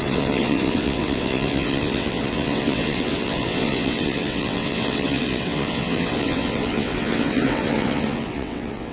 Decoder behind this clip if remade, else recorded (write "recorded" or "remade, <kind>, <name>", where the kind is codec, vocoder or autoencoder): remade, vocoder, WaveNeXt